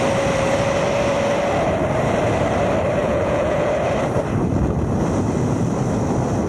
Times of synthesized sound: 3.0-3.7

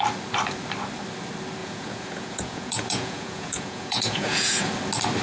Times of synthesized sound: 1.6-4.7

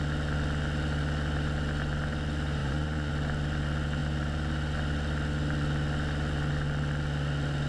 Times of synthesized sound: 2.6-3.1

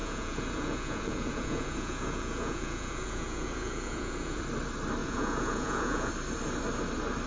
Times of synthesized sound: 0.0-4.4; 5.0-6.1

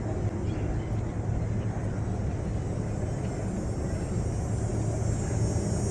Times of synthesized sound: none